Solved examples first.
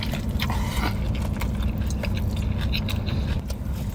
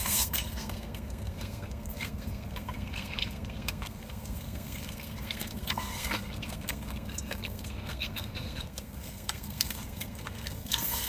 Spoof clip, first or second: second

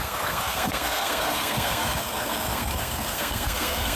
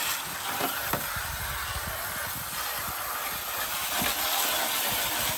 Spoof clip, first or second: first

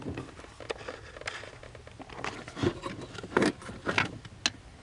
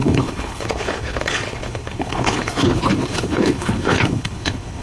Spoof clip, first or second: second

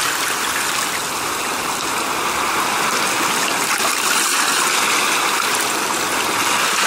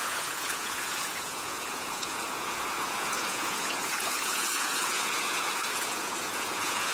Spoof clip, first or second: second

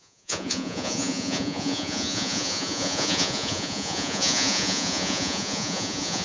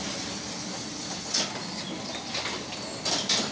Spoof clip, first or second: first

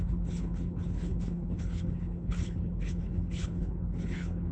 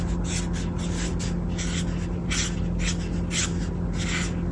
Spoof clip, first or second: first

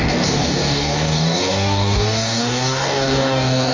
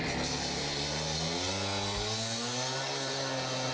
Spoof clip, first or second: first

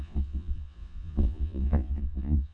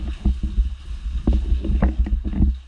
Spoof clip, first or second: first